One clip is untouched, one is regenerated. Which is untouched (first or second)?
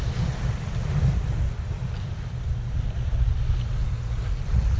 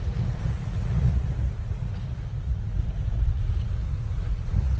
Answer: first